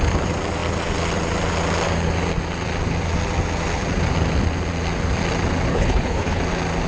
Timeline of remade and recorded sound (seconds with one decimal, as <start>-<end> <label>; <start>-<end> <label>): 0.0-5.7 recorded; 5.7-6.4 remade; 6.4-6.9 recorded